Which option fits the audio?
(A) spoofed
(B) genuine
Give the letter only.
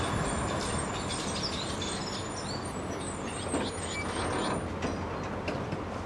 B